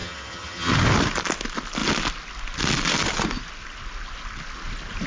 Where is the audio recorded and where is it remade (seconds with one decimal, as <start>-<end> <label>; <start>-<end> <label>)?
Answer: 0.0-0.7 remade; 0.7-5.1 recorded